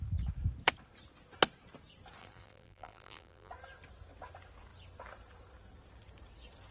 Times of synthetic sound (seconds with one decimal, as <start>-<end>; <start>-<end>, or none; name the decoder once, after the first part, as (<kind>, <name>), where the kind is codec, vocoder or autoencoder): 2.2-3.5 (vocoder, BigVGAN v2)